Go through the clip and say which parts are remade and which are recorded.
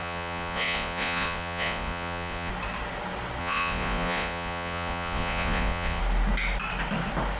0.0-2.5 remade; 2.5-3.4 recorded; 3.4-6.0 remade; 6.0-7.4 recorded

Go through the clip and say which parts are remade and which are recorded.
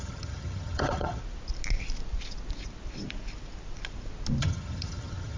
0.0-1.2 remade; 1.2-4.4 recorded; 4.4-5.4 remade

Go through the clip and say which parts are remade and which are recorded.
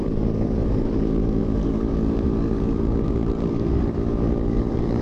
0.0-5.0 remade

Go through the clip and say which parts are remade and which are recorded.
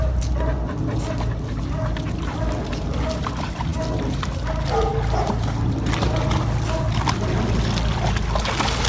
0.0-8.9 recorded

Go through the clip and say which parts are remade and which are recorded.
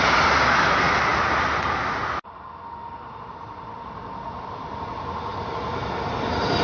0.0-6.6 recorded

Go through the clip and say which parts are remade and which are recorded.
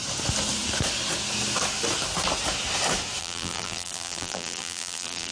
0.0-3.2 recorded; 3.2-5.3 remade